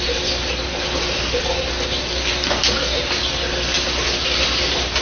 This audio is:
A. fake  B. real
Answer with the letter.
B